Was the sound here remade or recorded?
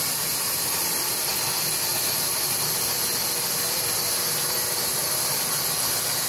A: recorded